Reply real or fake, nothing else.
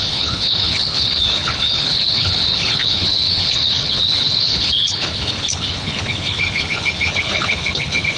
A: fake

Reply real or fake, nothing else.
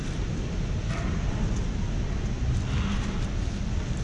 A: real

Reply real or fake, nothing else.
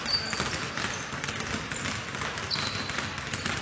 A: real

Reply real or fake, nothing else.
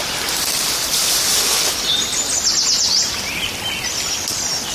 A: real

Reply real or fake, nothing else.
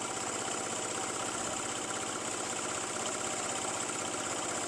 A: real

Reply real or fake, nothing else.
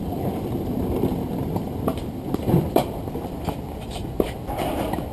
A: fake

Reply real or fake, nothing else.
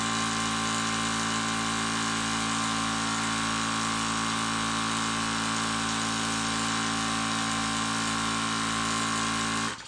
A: real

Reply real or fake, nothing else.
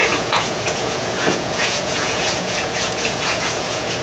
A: fake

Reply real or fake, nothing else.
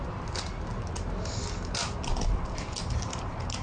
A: real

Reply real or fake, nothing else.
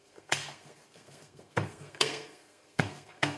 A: fake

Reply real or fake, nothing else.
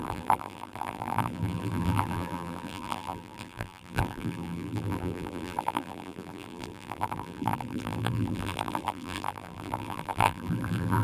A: fake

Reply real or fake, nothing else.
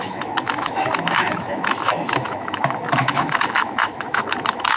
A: fake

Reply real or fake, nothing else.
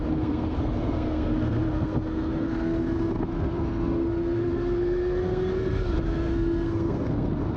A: fake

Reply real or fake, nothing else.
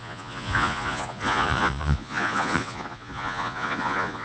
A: fake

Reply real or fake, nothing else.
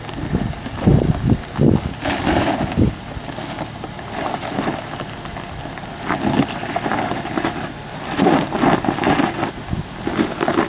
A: real